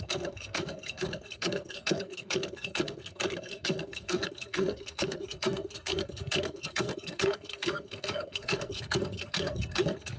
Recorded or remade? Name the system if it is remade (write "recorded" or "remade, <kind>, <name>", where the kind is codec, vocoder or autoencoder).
remade, codec, SNAC